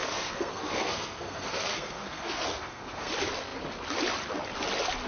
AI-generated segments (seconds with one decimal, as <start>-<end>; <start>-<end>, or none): 0.0-3.1